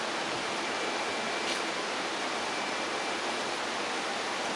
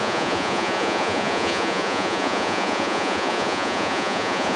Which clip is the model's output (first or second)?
second